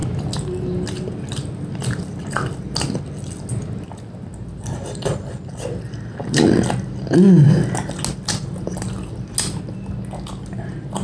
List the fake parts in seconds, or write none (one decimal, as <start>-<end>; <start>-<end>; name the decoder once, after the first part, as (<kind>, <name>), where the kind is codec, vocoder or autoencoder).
none